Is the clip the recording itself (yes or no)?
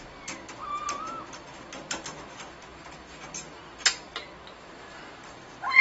yes